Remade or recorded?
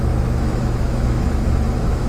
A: remade